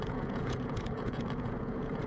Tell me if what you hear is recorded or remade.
remade